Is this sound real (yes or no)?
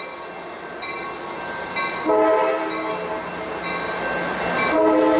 yes